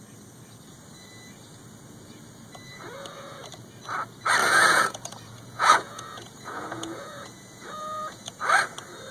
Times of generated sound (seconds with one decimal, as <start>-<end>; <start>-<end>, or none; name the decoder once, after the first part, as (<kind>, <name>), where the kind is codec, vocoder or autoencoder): 4.4-8.4 (vocoder, Vocos)